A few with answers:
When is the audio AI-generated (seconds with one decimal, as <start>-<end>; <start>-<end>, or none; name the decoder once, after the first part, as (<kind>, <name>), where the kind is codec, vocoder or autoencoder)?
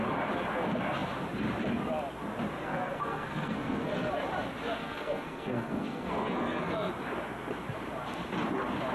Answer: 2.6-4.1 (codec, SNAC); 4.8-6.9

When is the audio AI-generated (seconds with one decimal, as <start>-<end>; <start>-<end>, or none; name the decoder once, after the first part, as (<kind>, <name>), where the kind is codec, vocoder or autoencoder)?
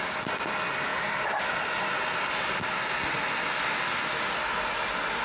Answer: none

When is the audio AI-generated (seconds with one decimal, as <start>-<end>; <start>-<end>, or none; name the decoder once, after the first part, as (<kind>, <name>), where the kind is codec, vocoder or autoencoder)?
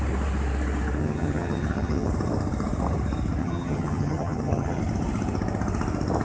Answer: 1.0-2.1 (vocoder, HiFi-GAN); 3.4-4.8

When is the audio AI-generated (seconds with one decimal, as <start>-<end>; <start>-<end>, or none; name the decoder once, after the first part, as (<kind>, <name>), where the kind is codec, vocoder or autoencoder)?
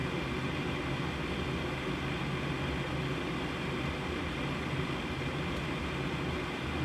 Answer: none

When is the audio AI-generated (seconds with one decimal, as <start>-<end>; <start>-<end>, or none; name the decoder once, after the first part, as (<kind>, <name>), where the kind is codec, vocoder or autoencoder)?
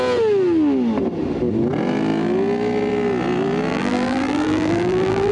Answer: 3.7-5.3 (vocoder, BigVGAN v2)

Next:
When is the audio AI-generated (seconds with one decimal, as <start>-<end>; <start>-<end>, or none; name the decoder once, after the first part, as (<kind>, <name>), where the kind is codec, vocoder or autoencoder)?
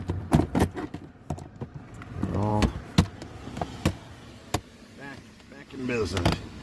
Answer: none